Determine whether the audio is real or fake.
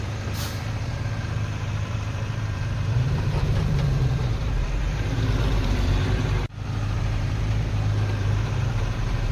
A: fake